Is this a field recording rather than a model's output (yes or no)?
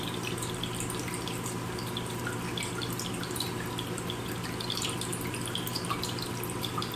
no